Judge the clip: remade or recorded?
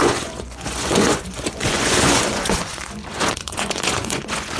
remade